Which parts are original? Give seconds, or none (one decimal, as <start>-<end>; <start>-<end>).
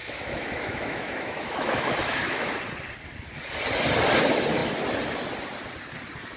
2.6-6.4